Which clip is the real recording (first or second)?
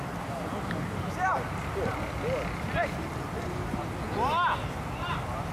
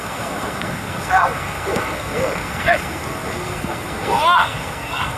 first